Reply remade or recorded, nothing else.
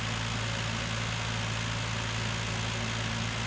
recorded